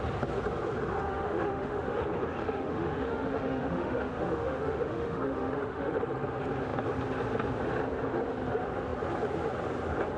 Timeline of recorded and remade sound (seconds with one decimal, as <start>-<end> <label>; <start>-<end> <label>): 0.0-1.0 recorded; 1.0-2.0 remade; 2.0-2.4 recorded; 2.4-6.0 remade; 6.0-10.2 recorded